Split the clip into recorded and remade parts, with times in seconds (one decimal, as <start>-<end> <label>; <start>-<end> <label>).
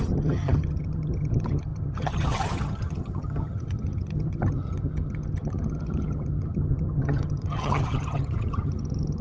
0.0-9.2 remade